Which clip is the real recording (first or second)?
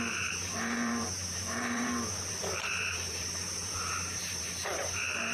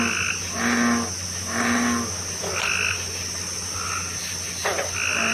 second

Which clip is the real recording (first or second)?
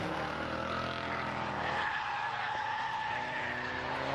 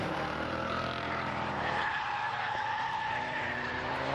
first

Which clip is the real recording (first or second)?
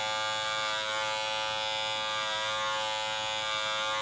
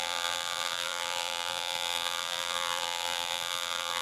first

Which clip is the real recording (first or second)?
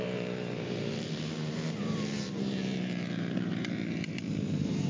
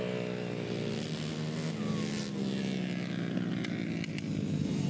second